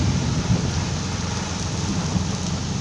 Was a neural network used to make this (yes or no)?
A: no